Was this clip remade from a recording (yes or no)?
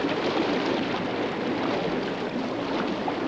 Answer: no